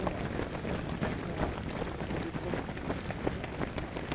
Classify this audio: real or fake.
real